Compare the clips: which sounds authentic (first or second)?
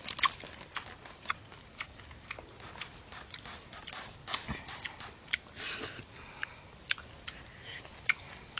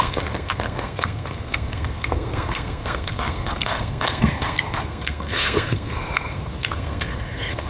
first